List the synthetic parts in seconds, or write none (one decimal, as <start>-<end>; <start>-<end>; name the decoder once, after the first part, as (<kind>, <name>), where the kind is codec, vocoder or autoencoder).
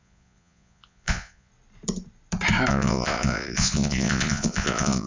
0.0-1.5 (vocoder, Vocos); 2.7-5.1